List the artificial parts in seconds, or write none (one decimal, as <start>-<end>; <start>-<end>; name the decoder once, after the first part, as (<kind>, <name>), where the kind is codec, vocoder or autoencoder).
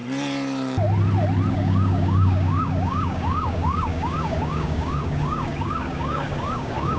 1.5-7.0 (codec, DAC)